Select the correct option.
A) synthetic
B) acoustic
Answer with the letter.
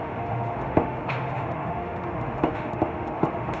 A